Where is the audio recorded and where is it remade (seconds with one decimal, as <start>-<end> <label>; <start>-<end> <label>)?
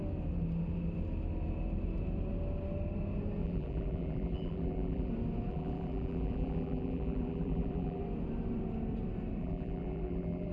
0.0-3.4 recorded; 3.4-5.1 remade; 5.1-5.5 recorded; 5.5-8.0 remade; 8.0-9.4 recorded; 9.4-10.5 remade